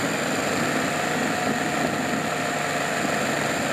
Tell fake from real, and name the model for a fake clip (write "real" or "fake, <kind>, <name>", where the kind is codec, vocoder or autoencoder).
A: real